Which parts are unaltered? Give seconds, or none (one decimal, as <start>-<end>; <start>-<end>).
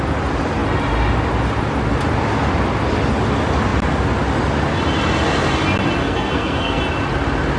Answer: 0.0-6.0; 6.8-7.6